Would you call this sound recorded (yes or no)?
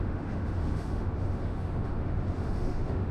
no